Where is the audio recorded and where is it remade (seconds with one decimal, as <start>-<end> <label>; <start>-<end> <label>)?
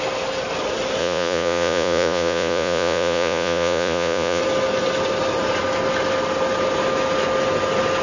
0.0-1.0 recorded; 1.0-4.4 remade; 4.4-8.0 recorded